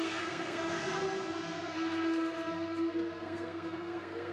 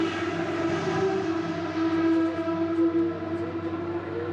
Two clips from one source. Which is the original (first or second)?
second